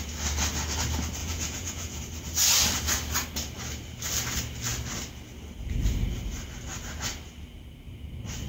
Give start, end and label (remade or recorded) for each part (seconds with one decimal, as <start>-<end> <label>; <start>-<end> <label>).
0.0-1.2 recorded; 1.2-2.0 remade; 2.0-8.5 recorded